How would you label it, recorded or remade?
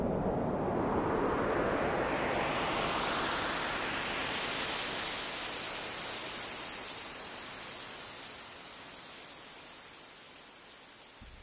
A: recorded